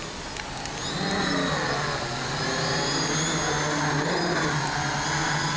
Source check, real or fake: real